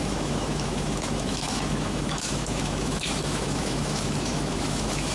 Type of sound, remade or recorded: remade